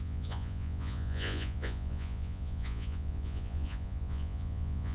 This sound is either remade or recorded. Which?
remade